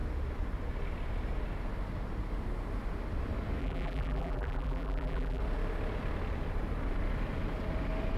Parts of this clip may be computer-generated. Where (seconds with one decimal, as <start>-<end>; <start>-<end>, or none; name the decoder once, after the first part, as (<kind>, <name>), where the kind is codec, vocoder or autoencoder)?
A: 3.6-5.4 (vocoder, BigVGAN v2)